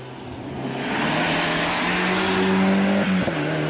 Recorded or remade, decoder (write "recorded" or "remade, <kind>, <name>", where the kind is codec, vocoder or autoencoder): recorded